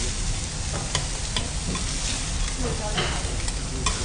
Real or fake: real